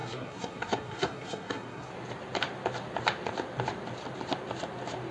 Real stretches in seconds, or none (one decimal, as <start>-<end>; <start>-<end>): 1.9-5.1